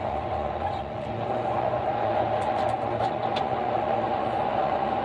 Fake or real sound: fake